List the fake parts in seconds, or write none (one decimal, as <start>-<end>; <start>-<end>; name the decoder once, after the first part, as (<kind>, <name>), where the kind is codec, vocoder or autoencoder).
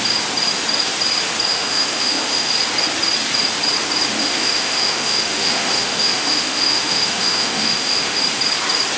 1.5-2.5 (autoencoder, DAC-VAE); 4.2-8.2